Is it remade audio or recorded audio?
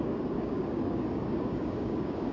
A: remade